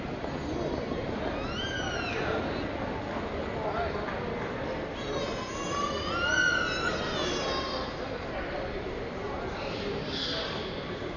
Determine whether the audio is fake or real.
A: real